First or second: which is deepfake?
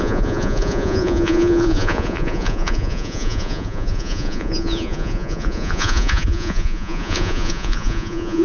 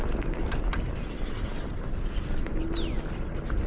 first